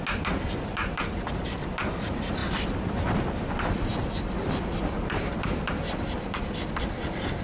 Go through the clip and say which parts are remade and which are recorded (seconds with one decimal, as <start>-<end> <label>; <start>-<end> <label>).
0.0-0.8 recorded; 0.8-1.6 remade; 1.6-2.4 recorded; 2.4-6.8 remade; 6.8-7.4 recorded